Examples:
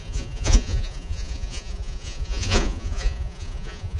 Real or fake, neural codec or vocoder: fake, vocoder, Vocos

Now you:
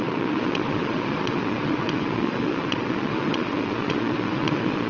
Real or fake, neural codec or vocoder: fake, vocoder, Vocos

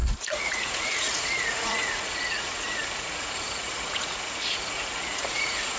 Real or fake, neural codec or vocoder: fake, vocoder, Vocos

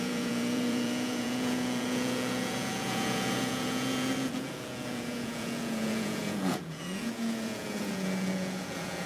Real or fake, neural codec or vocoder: fake, vocoder, Vocos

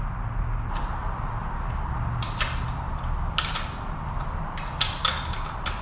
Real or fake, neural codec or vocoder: real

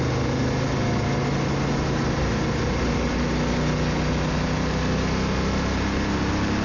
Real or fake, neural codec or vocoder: real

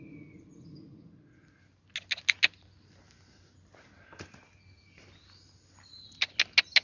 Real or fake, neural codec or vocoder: real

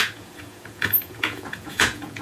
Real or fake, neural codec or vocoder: fake, vocoder, Vocos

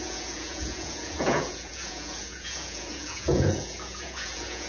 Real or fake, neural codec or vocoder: fake, vocoder, Vocos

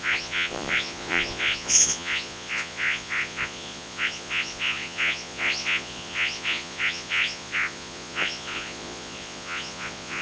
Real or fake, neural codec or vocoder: fake, vocoder, Vocos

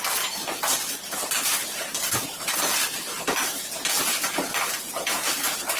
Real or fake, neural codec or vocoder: real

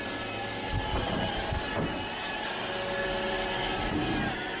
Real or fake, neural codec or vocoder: real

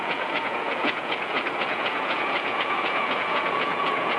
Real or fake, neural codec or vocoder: fake, vocoder, Vocos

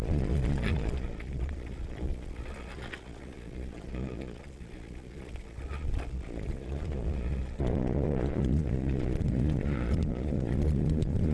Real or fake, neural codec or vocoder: fake, vocoder, Vocos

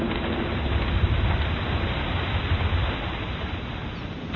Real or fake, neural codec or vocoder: real